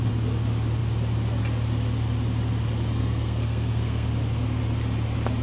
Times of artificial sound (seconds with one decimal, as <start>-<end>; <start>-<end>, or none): 3.0-4.1

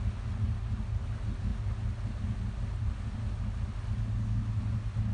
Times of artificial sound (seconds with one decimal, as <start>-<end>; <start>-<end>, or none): none

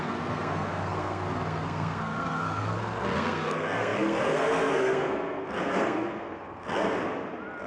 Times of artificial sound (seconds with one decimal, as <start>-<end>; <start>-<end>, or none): 0.0-7.0

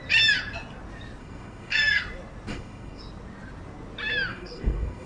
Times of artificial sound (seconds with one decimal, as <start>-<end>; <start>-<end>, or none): 1.2-2.0; 2.5-3.0; 4.3-5.1